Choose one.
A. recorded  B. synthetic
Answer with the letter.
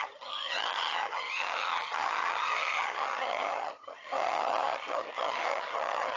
B